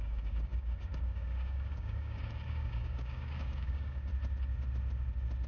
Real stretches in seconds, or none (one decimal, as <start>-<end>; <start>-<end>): 4.1-5.5